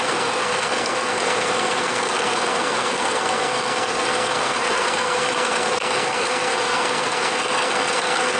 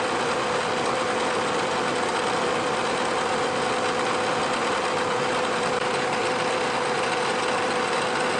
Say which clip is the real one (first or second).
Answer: second